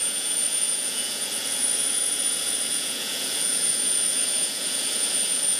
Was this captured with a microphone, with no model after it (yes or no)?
no